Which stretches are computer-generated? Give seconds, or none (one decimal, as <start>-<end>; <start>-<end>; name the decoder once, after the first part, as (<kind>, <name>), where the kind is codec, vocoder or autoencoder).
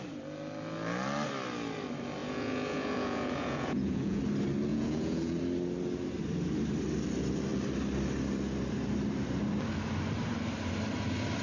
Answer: 2.2-4.2 (vocoder, Vocos); 4.7-5.4